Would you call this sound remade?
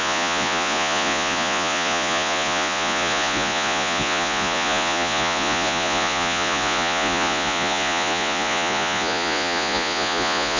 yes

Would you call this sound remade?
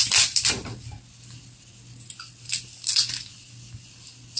yes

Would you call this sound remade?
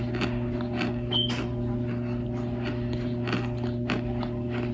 no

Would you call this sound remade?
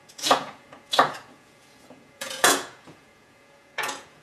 yes